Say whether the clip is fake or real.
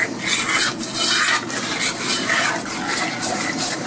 real